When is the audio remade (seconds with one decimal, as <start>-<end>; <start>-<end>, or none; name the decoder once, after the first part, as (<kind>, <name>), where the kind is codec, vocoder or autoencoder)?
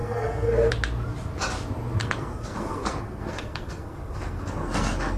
0.0-0.7 (codec, SNAC); 2.0-5.2